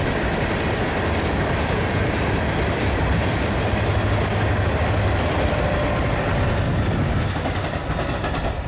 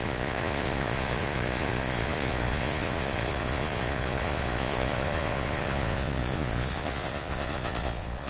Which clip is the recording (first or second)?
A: first